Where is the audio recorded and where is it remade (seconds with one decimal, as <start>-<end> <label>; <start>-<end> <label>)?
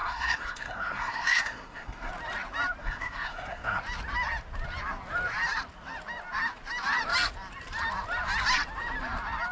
0.0-2.1 remade; 2.1-2.8 recorded; 2.8-3.8 remade; 3.8-9.5 recorded